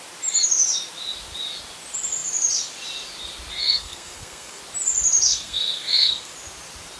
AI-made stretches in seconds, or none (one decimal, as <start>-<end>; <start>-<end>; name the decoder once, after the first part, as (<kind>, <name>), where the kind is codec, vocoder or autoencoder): 3.6-4.6 (codec, SNAC); 5.3-6.3